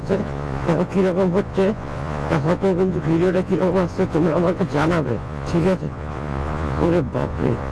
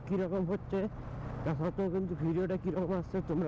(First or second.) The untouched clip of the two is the second